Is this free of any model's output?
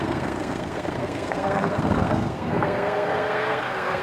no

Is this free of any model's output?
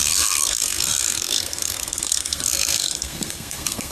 no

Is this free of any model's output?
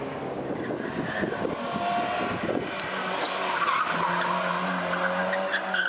yes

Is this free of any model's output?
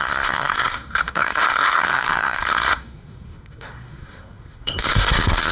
no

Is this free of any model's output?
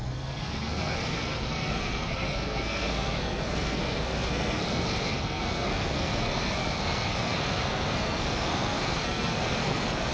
no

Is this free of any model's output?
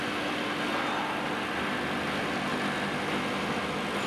yes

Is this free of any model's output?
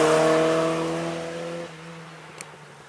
yes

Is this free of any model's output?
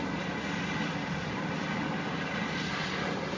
yes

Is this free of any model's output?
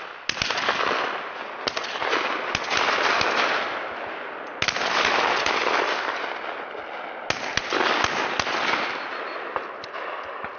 yes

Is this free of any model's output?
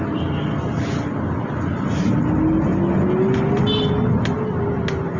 yes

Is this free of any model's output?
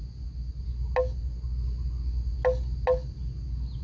yes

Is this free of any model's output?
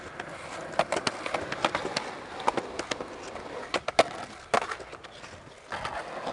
yes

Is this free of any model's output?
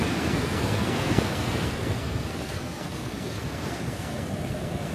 no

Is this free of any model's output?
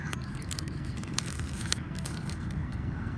no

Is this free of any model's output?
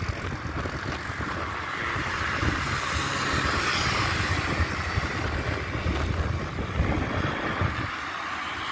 yes